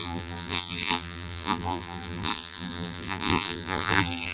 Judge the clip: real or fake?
fake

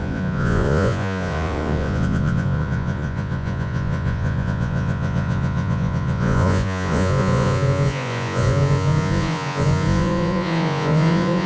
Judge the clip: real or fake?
fake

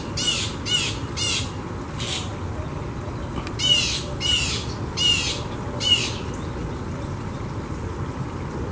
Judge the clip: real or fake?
real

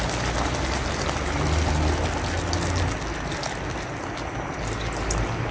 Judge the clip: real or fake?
real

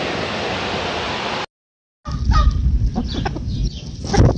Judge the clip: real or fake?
real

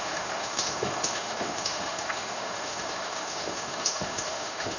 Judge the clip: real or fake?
fake